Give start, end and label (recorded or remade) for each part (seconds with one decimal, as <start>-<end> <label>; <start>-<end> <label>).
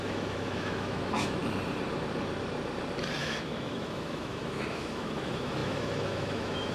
0.0-1.4 remade; 1.4-3.2 recorded; 3.2-6.7 remade